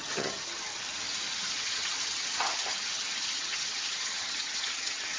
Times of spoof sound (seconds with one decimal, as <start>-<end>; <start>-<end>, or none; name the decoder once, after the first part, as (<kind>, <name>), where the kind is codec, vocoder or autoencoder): 0.0-0.7 (vocoder, HiFi-GAN); 1.3-5.2